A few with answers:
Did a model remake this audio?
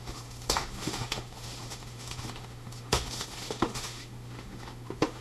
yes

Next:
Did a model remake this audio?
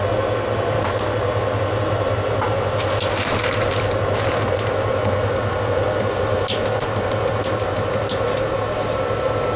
no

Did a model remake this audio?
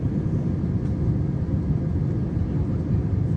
no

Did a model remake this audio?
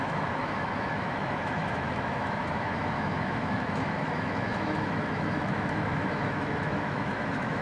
yes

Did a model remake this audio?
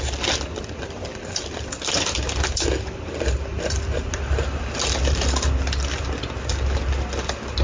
no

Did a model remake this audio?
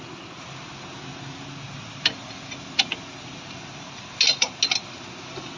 no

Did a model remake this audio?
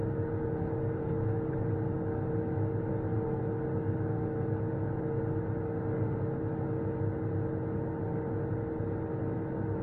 no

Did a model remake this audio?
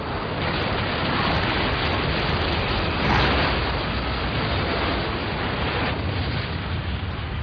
no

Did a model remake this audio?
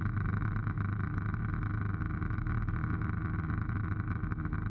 yes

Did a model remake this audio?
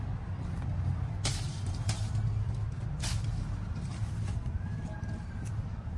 no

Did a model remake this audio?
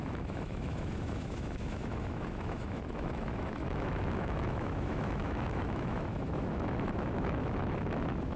yes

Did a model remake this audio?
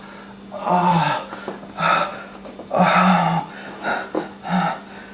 no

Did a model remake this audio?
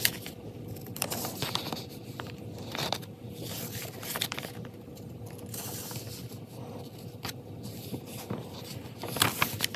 no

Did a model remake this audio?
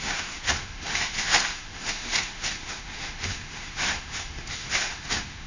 yes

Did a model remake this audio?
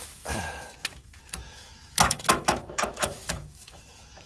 yes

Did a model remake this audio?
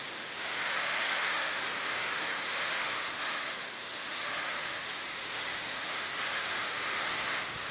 yes